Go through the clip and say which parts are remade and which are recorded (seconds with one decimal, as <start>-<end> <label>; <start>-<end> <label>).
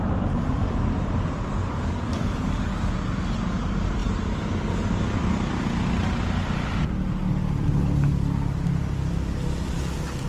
0.0-1.6 recorded; 1.6-2.9 remade; 2.9-10.3 recorded